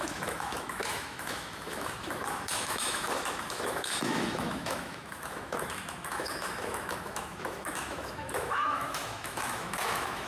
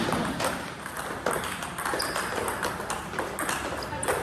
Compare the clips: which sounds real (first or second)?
second